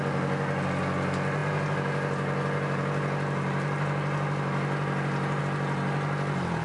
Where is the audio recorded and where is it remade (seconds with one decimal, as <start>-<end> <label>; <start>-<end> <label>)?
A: 0.0-6.6 recorded